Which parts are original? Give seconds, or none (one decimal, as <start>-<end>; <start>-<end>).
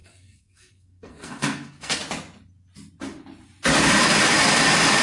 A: 2.0-5.0